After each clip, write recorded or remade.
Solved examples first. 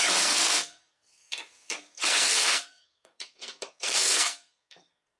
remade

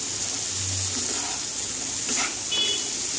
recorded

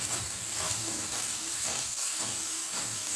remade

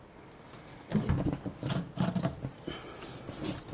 recorded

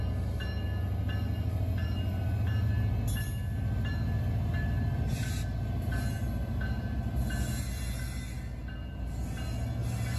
recorded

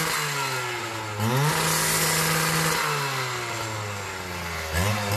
recorded